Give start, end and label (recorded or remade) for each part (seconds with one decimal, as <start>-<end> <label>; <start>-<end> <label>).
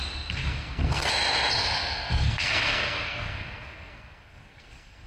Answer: 0.0-0.4 recorded; 0.4-1.1 remade; 1.1-1.6 recorded; 1.6-5.1 remade